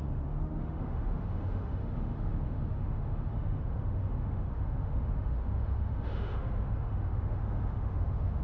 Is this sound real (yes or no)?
no